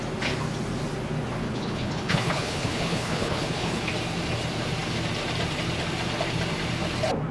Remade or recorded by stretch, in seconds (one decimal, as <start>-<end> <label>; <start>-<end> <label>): 0.0-1.4 recorded; 1.4-3.8 remade; 3.8-7.3 recorded